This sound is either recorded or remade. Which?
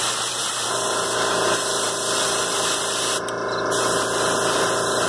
recorded